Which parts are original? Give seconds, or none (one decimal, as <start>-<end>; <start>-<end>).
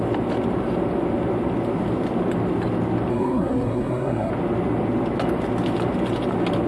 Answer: 0.0-3.1; 4.3-6.7